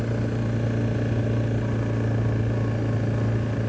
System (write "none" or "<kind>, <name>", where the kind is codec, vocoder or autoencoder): none